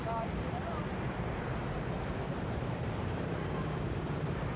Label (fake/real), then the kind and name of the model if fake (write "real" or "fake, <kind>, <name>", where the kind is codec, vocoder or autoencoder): fake, vocoder, BigVGAN v2